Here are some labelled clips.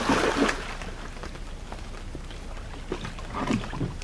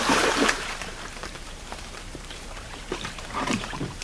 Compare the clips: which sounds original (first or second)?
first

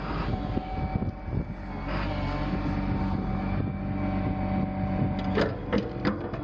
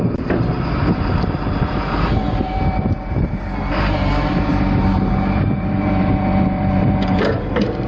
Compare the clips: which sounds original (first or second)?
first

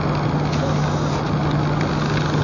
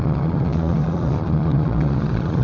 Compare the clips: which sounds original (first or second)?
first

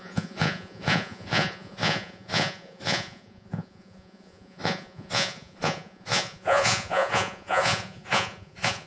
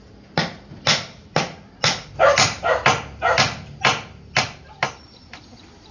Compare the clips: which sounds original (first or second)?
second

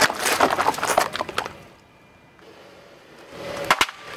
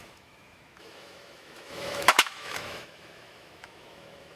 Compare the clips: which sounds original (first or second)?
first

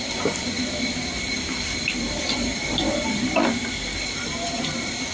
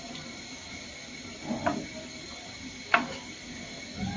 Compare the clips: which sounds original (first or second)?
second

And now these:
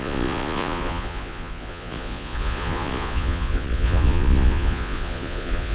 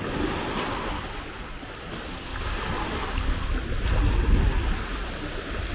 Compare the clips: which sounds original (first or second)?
second